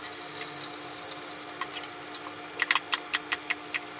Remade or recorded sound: recorded